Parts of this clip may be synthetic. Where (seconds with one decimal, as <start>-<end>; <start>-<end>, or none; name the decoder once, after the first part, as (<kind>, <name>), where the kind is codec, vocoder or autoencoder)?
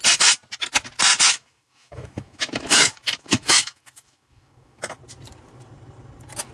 1.1-5.0 (autoencoder, DAC-VAE)